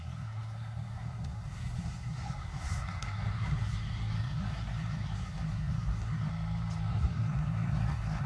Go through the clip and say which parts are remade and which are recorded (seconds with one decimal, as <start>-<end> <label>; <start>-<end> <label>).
0.0-6.3 remade; 6.3-6.9 recorded; 6.9-8.3 remade